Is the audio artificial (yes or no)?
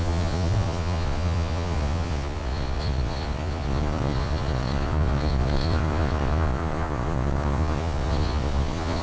yes